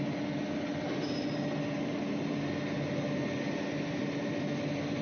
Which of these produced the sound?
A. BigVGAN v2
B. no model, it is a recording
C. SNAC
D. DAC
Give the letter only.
B